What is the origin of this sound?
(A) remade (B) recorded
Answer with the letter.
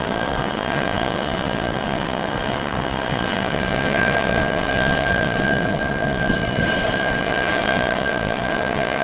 A